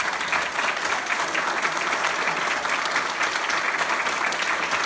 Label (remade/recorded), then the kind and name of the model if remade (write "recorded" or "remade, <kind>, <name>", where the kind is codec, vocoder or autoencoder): recorded